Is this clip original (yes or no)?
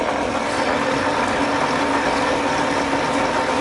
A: yes